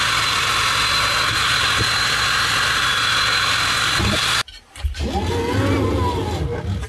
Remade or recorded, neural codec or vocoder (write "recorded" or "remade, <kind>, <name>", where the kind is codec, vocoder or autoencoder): recorded